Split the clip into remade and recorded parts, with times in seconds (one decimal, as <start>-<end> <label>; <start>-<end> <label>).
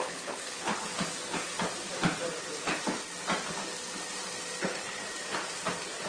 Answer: 0.0-0.9 remade; 0.9-4.6 recorded; 4.6-5.0 remade; 5.0-6.1 recorded